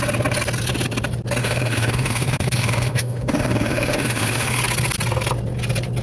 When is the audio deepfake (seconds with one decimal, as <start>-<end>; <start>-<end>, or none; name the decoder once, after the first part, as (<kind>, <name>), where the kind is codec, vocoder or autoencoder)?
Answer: 1.4-4.6 (autoencoder, DAC-VAE)